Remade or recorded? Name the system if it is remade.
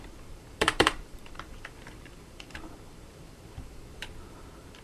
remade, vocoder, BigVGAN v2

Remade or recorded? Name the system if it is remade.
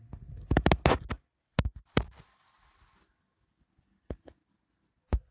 recorded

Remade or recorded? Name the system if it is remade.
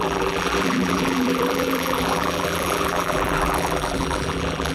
remade, vocoder, BigVGAN v2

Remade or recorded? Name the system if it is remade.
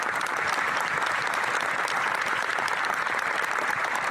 remade, vocoder, BigVGAN v2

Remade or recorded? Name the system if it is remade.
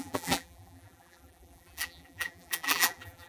remade, vocoder, BigVGAN v2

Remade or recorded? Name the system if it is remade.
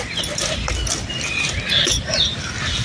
recorded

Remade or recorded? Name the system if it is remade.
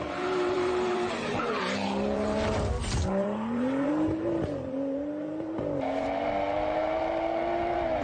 remade, vocoder, BigVGAN v2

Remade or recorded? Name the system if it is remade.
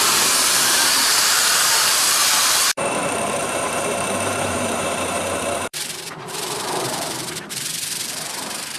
remade, vocoder, BigVGAN v2